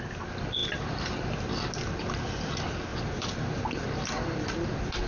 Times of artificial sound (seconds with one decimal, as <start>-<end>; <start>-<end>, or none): 0.6-1.1; 2.9-3.6